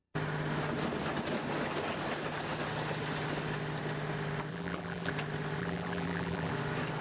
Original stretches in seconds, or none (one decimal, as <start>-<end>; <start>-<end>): 0.0-4.5; 5.1-5.6; 6.5-7.0